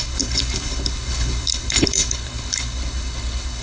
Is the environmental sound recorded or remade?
remade